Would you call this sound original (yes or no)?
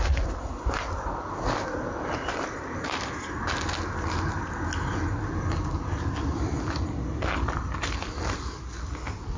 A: yes